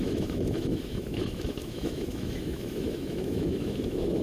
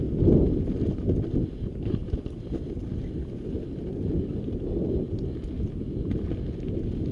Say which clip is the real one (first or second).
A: second